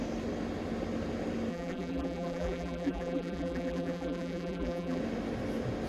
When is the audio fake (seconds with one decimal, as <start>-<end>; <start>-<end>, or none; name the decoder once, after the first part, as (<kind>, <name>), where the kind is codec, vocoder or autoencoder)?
1.5-5.0 (vocoder, BigVGAN v2)